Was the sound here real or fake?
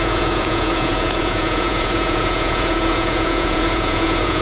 fake